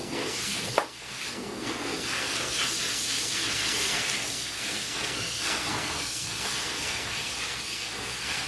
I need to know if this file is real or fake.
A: fake